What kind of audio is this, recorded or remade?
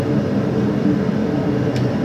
recorded